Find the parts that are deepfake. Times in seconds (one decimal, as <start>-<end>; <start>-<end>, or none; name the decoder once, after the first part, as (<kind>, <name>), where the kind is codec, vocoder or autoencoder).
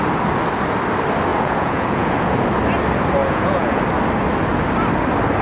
1.3-2.4 (vocoder, Vocos); 3.2-3.8